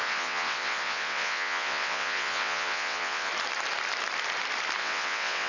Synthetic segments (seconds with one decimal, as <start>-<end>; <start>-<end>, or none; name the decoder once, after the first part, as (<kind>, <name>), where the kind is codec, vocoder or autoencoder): 0.0-3.3 (vocoder, WaveNeXt); 4.8-5.5